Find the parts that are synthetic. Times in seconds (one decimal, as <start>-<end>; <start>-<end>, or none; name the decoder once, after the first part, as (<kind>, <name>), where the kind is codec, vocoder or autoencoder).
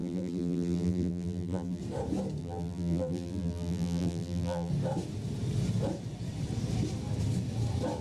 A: 0.0-1.8 (vocoder, BigVGAN v2); 2.4-4.7